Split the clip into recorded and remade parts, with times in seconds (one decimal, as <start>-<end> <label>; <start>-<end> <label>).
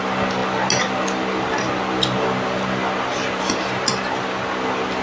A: 0.0-5.0 recorded